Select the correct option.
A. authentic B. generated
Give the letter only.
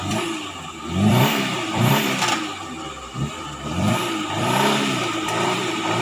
B